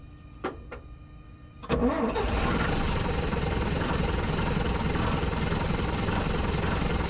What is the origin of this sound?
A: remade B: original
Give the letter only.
A